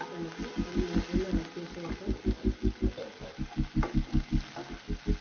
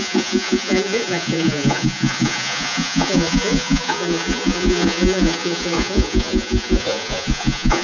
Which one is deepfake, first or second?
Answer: second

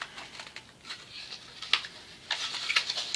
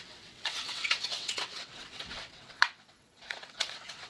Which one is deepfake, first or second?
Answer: second